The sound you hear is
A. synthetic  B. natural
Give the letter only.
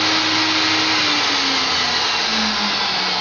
B